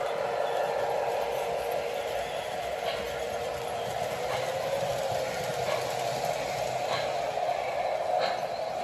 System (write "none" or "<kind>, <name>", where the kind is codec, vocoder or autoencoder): none